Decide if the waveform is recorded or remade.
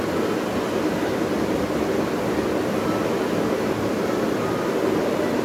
recorded